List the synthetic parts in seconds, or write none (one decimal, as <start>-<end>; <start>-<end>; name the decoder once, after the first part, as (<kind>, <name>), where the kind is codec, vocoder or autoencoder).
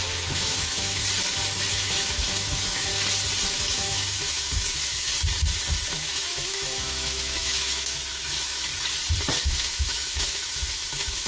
0.0-1.0 (autoencoder, DAC-VAE); 1.7-2.9; 3.5-5.1; 5.9-8.7; 9.4-11.3